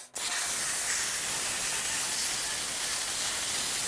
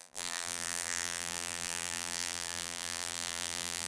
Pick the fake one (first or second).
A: second